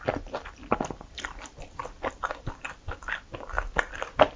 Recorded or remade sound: recorded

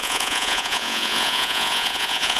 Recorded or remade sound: remade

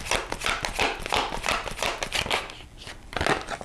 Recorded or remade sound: recorded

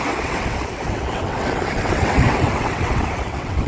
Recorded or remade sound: remade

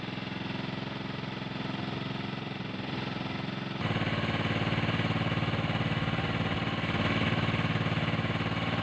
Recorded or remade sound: recorded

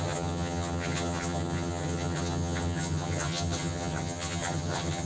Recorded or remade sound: remade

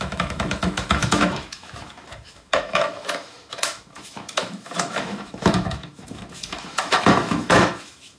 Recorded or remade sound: remade